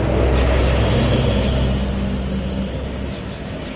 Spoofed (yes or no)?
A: no